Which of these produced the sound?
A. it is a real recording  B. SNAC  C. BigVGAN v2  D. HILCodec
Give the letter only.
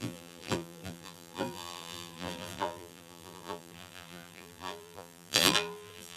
C